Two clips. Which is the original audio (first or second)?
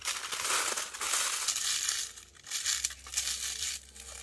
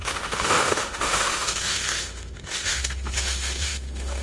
first